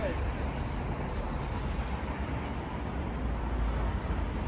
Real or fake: real